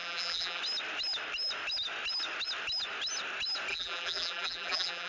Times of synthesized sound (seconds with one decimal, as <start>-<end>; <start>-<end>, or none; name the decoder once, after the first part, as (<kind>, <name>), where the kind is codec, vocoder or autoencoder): 0.0-0.6 (vocoder, BigVGAN v2); 3.7-5.1